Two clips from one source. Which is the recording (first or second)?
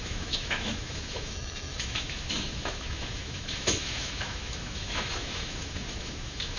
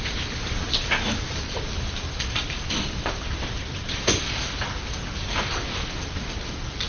second